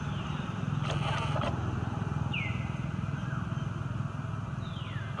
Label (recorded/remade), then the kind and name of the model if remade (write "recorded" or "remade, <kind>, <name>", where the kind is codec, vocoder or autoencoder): recorded